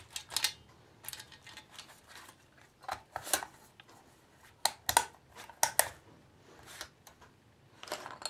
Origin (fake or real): real